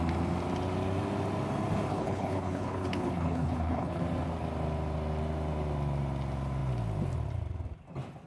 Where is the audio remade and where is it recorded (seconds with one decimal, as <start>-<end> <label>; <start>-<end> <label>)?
0.0-1.9 recorded; 1.9-4.0 remade; 4.0-8.3 recorded